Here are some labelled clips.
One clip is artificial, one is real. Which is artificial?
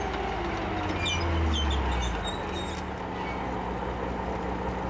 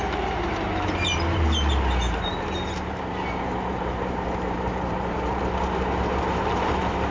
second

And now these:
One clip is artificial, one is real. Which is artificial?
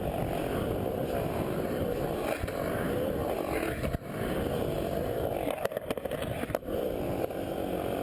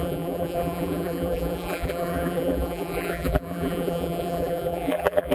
second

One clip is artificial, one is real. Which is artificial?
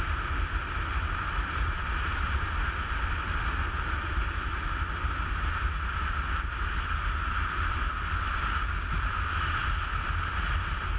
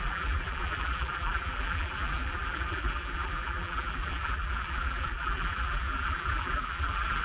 second